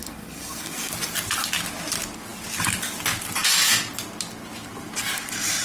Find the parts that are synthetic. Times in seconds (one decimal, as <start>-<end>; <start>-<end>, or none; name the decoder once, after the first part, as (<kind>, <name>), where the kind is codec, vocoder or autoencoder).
0.0-0.9 (codec, SNAC)